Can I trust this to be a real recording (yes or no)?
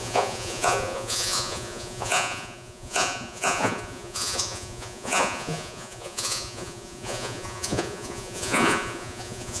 no